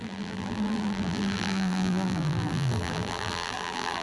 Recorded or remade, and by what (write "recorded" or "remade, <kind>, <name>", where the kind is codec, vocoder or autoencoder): remade, vocoder, BigVGAN v2